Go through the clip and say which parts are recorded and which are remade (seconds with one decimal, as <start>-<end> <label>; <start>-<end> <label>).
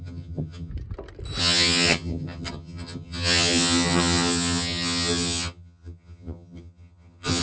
0.0-0.7 remade; 0.7-1.4 recorded; 1.4-7.4 remade